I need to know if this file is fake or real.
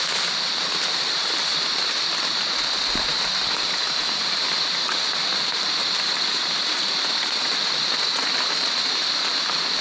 fake